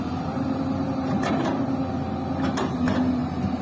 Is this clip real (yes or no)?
yes